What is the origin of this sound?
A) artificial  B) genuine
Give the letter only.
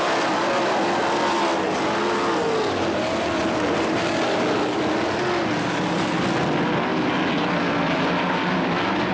B